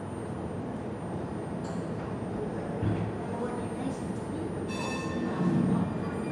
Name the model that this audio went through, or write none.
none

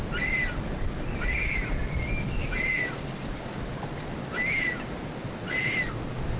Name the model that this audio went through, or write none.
none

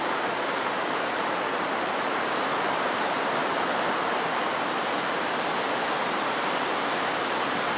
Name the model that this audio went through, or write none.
vocoder, BigVGAN v2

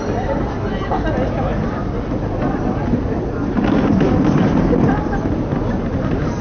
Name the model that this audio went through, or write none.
none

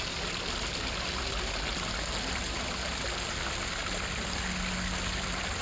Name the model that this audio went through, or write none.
none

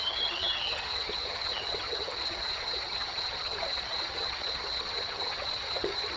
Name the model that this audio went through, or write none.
vocoder, HiFi-GAN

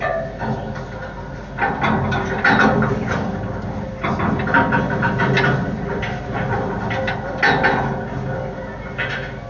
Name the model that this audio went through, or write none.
none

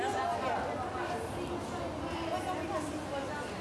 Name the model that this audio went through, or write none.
none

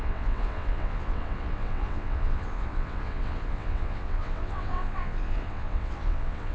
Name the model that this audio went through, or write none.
vocoder, WaveNeXt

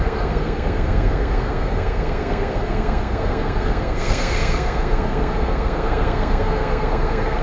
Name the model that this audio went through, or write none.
codec, SNAC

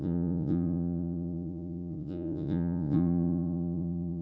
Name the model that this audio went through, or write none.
vocoder, Vocos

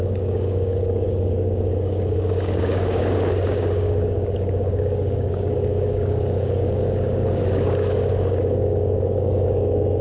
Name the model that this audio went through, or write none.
codec, DAC